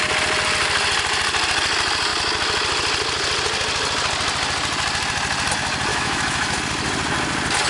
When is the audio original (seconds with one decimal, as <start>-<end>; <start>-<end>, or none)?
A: 0.0-5.9; 6.6-7.7